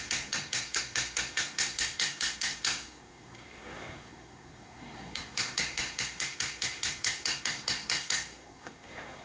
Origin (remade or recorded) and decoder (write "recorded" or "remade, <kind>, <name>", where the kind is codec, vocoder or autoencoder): remade, codec, SNAC